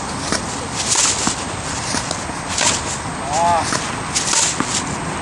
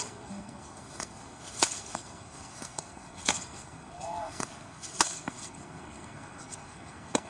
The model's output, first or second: second